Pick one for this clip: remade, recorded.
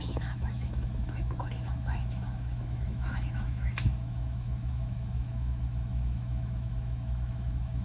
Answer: remade